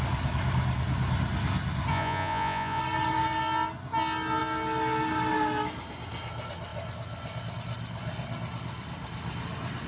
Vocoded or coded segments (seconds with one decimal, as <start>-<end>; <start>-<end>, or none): 1.9-2.8